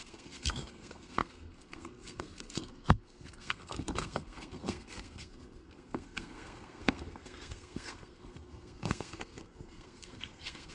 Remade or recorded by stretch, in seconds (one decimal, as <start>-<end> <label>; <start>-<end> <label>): 0.0-10.7 remade